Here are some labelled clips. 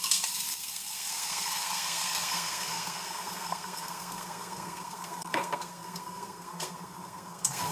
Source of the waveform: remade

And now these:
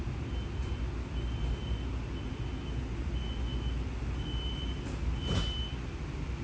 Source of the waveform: recorded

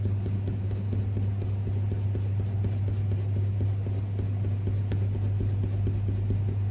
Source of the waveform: recorded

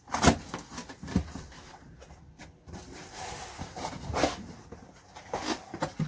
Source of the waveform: recorded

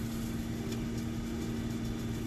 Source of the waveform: recorded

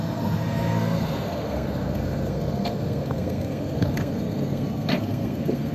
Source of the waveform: remade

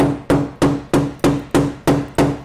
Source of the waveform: recorded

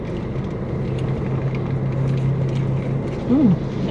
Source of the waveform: recorded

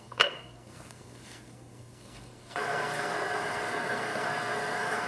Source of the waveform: remade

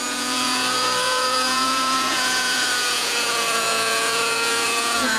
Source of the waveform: remade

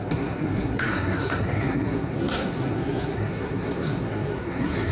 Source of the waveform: remade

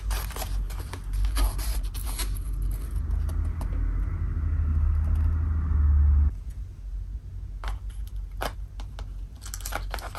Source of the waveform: recorded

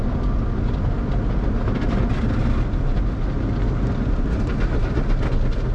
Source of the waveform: recorded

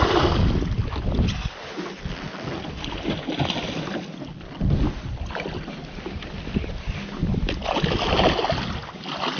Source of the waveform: recorded